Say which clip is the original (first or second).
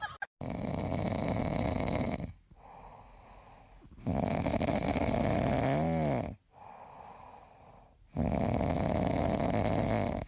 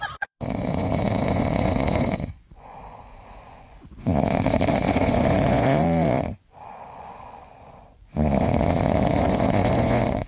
first